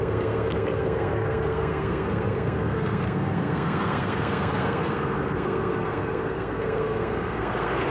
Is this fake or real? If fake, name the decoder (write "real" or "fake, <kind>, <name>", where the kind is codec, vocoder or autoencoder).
fake, codec, SNAC